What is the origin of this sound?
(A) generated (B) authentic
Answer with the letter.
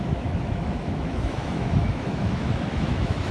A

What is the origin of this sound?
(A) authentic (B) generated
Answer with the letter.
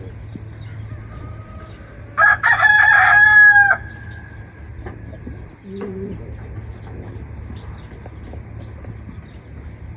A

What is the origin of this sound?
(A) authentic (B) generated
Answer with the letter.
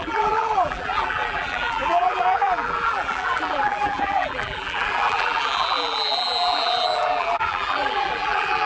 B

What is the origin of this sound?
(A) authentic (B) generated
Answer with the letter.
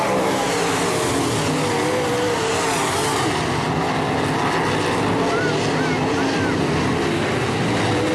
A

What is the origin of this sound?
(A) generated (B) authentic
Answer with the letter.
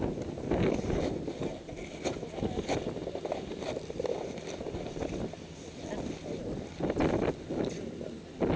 B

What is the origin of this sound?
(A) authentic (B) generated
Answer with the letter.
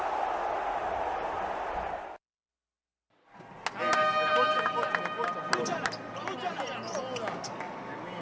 A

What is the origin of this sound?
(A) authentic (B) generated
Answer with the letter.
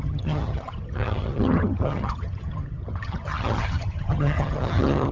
B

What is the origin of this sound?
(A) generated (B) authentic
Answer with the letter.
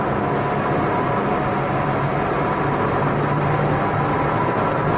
B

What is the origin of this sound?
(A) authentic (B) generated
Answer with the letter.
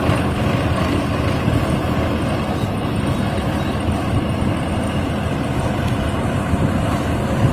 A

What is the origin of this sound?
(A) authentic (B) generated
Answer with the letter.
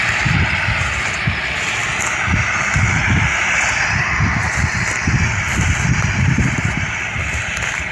A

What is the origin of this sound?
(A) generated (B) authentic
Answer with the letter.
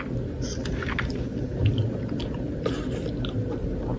B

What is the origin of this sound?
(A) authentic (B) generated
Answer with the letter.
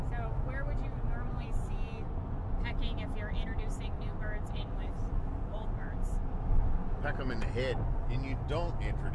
A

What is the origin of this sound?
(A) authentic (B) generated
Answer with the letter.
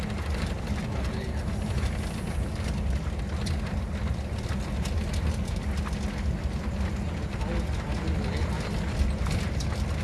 A